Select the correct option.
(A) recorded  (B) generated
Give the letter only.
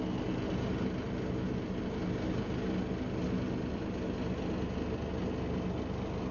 A